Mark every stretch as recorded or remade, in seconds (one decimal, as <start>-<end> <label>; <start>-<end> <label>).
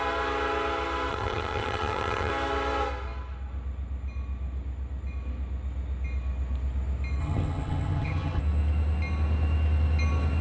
0.0-1.1 recorded; 1.1-2.3 remade; 2.3-7.2 recorded; 7.2-8.4 remade; 8.4-10.4 recorded